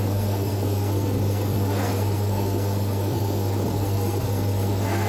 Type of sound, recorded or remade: remade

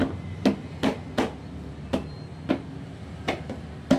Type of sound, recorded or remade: recorded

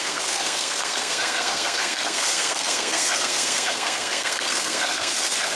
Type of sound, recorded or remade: remade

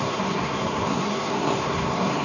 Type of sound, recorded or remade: remade